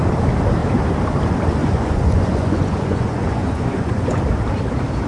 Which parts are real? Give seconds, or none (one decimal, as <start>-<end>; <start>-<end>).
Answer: 0.0-1.6; 4.2-5.1